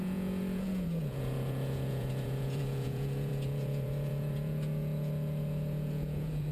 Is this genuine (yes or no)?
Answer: no